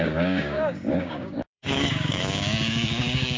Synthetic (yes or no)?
yes